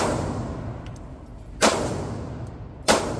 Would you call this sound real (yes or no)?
yes